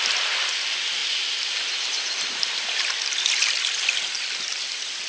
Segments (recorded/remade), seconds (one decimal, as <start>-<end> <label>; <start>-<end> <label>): 0.0-5.1 recorded